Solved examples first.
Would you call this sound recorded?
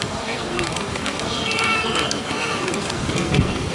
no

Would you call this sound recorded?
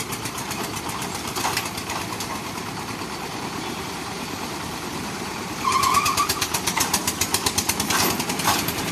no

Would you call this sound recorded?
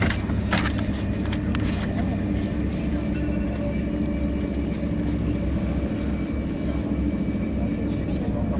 yes